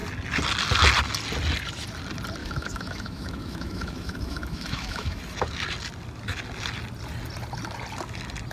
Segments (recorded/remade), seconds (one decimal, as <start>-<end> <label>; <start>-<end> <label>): 0.0-2.4 recorded; 2.4-5.2 remade; 5.2-8.5 recorded